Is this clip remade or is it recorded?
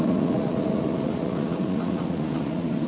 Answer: remade